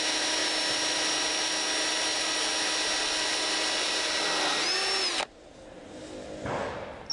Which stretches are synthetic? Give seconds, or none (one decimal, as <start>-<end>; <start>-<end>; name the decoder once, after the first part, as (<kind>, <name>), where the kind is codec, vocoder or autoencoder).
none

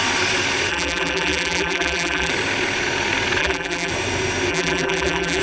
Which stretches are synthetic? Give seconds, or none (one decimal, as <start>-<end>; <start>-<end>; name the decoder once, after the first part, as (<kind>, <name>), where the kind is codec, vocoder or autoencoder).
0.7-2.3 (vocoder, BigVGAN v2); 3.4-3.9; 4.5-5.4

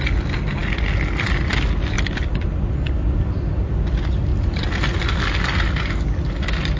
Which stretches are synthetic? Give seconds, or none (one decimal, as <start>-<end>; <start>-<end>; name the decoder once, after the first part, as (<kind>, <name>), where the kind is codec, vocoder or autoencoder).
none

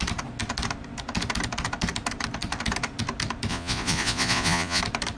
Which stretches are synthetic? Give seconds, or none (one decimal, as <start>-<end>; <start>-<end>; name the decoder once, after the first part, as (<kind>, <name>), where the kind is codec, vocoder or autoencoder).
3.5-4.8 (vocoder, Vocos)